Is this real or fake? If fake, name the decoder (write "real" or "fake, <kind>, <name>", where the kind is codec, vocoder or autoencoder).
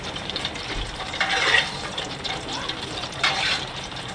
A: fake, vocoder, BigVGAN v2